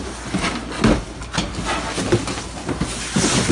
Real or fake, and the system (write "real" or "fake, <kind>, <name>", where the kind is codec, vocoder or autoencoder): real